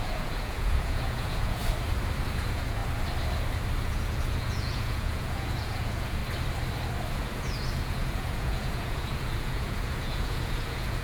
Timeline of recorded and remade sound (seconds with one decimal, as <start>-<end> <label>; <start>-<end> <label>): 0.0-1.6 remade; 1.6-2.3 recorded; 2.3-2.8 remade; 2.8-3.8 recorded; 3.8-6.2 remade; 6.2-7.1 recorded; 7.1-11.0 remade